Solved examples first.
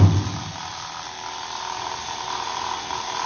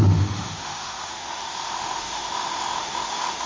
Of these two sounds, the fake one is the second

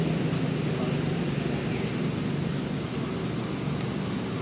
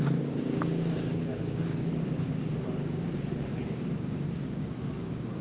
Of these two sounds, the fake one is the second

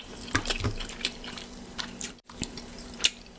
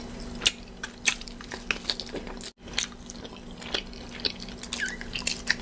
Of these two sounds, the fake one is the first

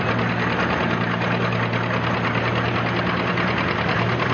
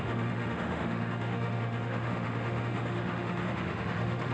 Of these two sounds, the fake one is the second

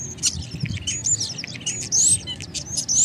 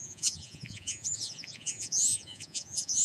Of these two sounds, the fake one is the second